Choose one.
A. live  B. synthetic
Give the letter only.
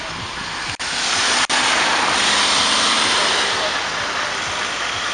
A